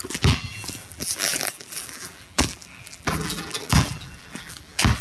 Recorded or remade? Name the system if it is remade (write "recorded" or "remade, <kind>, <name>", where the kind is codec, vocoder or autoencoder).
remade, vocoder, BigVGAN v2